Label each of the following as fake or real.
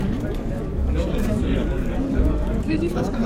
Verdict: fake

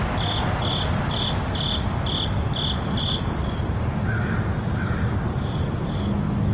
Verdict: real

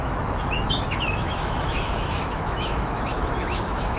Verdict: fake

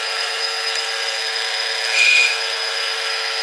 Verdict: fake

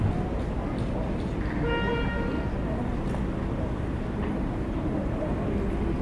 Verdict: real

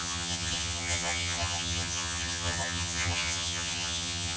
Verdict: fake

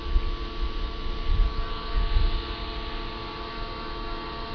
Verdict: real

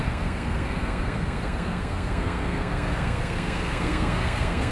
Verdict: fake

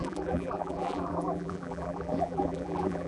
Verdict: fake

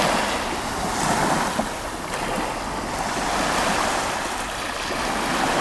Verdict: real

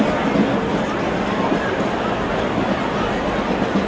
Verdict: real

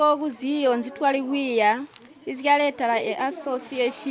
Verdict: real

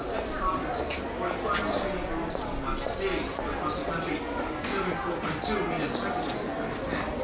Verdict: real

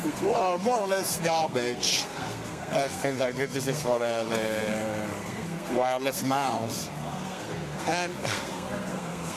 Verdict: fake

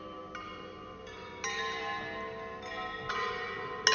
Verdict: real